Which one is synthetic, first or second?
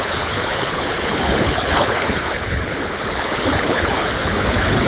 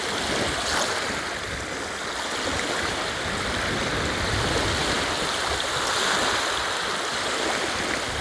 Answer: first